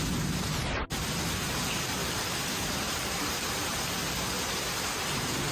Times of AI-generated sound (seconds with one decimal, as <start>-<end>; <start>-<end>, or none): 2.0-3.2